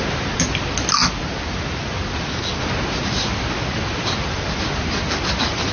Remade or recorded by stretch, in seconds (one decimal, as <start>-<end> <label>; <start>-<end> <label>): 0.0-5.7 recorded